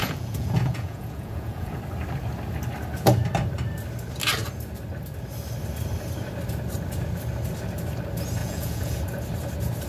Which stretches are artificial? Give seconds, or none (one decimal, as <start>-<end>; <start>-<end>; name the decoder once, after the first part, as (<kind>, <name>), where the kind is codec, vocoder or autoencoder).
0.0-1.8 (vocoder, Vocos); 8.4-8.9